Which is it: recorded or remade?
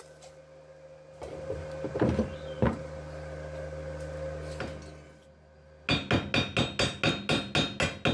recorded